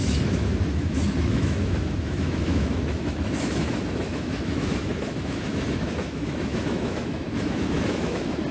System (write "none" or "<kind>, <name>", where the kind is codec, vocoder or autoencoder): autoencoder, DAC-VAE